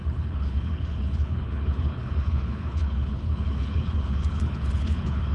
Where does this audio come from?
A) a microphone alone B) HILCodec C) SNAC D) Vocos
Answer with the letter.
B